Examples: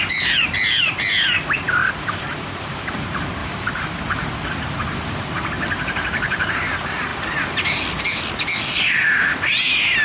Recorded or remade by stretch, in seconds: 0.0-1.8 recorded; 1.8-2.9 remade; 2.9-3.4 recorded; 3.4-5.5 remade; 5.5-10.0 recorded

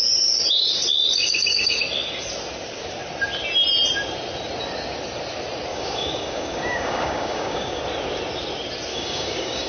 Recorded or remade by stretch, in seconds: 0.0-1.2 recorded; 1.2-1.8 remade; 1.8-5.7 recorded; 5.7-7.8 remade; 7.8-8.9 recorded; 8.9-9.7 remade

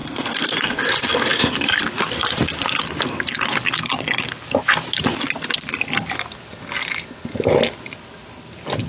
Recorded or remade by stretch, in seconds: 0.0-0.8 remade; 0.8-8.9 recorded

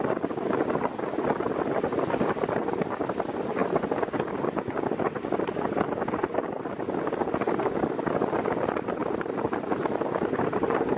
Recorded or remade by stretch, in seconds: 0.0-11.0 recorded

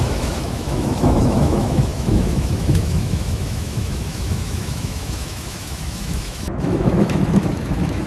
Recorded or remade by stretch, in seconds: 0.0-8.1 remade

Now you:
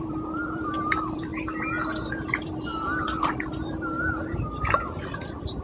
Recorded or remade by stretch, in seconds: 0.0-1.3 remade; 1.3-2.1 recorded; 2.1-5.6 remade

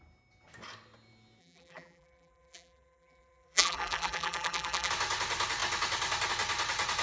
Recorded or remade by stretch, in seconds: 0.0-1.4 recorded; 1.4-4.9 remade; 4.9-7.0 recorded